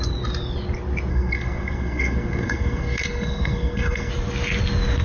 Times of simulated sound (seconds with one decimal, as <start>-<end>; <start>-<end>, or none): 1.1-4.1